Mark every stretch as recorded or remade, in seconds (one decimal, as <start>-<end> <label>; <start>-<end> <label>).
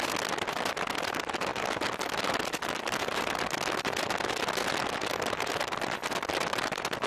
0.0-7.1 recorded